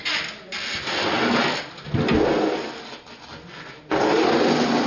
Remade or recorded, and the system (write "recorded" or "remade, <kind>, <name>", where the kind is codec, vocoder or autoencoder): recorded